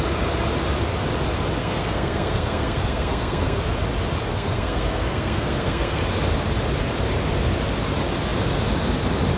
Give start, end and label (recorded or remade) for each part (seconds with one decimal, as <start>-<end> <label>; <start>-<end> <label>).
0.0-1.6 recorded; 1.6-3.6 remade; 3.6-4.3 recorded; 4.3-6.0 remade; 6.0-9.4 recorded